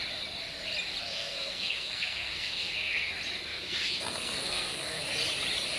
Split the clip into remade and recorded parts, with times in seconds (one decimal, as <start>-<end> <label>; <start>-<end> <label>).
0.0-1.0 recorded; 1.0-3.1 remade; 3.1-3.5 recorded; 3.5-5.0 remade; 5.0-5.8 recorded